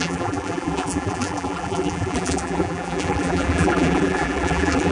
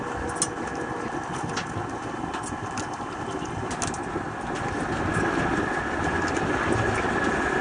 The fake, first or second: first